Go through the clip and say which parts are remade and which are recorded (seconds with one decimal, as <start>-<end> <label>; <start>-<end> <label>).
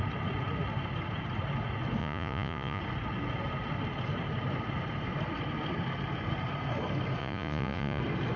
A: 0.0-2.0 recorded; 2.0-2.8 remade; 2.8-7.2 recorded; 7.2-8.0 remade; 8.0-8.4 recorded